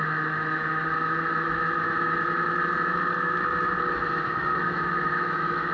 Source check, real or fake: fake